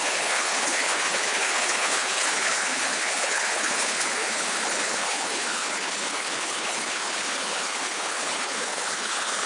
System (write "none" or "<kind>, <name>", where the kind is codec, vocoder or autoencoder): codec, HILCodec